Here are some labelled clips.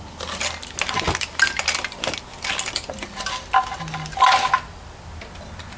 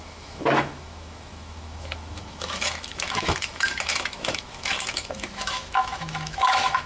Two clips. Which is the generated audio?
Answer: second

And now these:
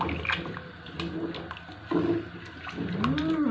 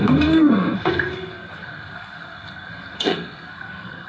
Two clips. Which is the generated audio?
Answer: second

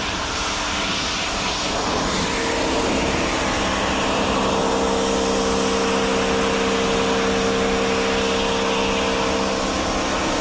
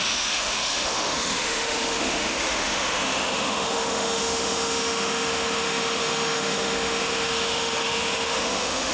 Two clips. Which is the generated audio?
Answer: second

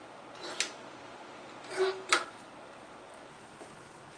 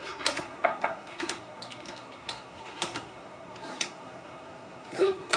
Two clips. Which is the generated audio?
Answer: second